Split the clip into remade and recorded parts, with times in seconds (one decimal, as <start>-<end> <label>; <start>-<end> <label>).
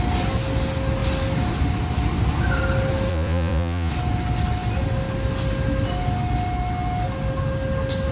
0.0-3.1 recorded; 3.1-3.9 remade; 3.9-8.1 recorded